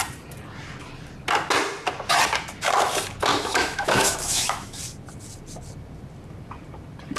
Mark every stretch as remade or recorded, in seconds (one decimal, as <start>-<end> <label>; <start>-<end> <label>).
0.0-3.3 recorded; 3.3-4.8 remade; 4.8-7.2 recorded